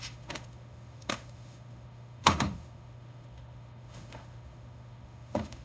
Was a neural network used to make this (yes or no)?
yes